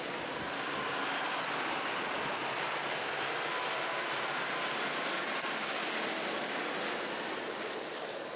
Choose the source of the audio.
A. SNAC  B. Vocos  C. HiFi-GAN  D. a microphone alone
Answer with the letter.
D